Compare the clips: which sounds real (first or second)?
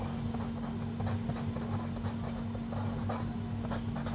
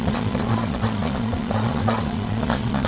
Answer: first